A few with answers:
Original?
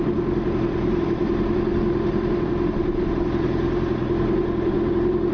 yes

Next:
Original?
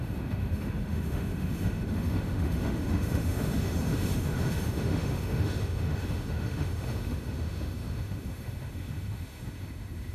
no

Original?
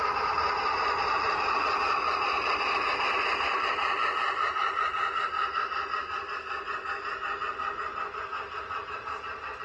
yes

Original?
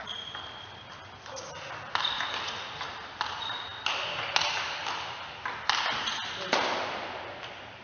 yes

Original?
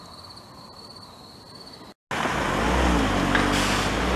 yes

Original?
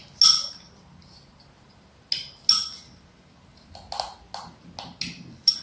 yes